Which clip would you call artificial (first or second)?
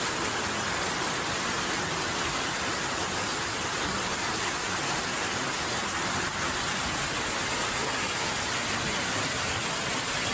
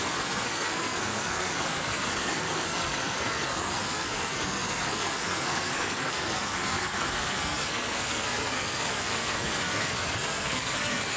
second